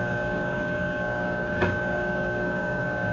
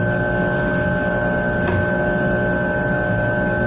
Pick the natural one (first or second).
second